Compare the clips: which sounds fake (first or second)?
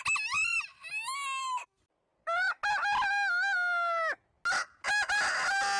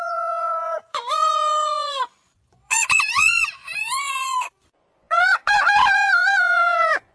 second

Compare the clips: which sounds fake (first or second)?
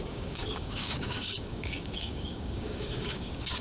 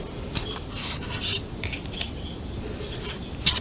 first